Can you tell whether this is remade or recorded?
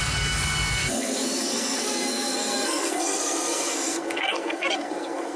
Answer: remade